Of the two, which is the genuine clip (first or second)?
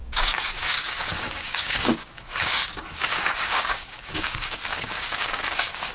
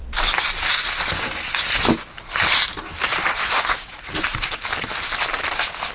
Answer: second